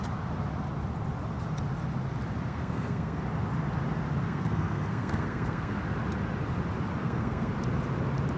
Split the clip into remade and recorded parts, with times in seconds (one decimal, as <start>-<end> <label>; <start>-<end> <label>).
0.0-2.5 recorded; 2.5-3.2 remade; 3.2-4.2 recorded; 4.2-5.8 remade; 5.8-7.0 recorded; 7.0-7.5 remade; 7.5-8.4 recorded